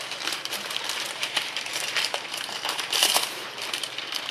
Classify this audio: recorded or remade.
remade